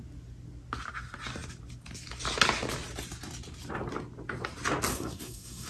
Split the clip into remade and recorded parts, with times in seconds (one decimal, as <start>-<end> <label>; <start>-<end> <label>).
0.0-4.9 recorded; 4.9-5.7 remade